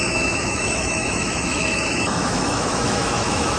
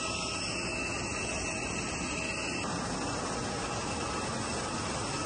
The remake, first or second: first